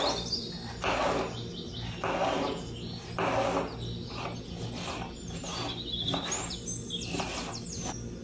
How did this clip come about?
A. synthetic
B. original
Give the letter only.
B